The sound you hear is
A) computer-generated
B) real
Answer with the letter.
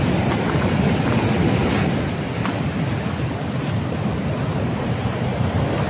B